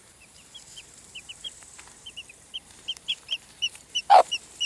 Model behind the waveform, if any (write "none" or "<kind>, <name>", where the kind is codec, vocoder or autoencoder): vocoder, BigVGAN v2